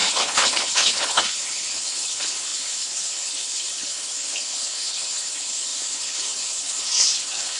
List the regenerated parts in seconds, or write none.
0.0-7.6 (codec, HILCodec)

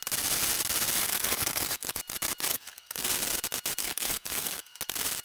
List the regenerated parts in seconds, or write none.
1.1-2.0 (codec, SNAC); 2.5-3.1; 3.8-4.8